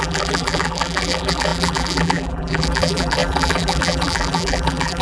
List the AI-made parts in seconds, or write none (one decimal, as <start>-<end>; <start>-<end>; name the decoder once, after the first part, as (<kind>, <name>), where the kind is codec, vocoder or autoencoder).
0.0-5.0 (vocoder, BigVGAN v2)